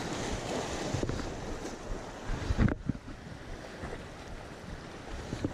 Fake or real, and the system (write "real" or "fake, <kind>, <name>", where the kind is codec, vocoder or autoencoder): fake, vocoder, BigVGAN v2